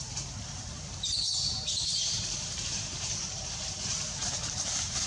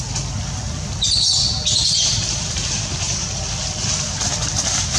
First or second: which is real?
second